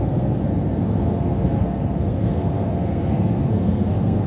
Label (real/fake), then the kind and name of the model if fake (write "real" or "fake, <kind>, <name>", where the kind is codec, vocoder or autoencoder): fake, codec, SNAC